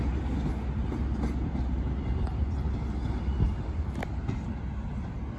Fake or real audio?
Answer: real